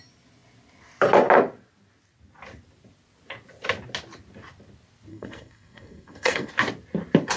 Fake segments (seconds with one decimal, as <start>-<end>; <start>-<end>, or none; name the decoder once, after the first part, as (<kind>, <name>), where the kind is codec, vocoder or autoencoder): 5.1-6.5 (codec, SNAC)